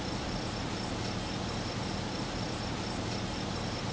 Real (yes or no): yes